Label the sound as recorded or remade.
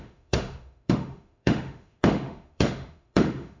remade